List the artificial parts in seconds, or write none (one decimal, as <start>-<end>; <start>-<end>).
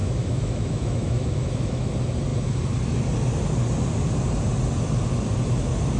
0.0-1.9